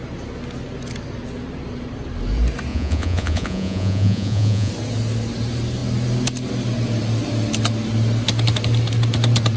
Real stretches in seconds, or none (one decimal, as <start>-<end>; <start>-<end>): 0.0-2.7; 4.7-9.6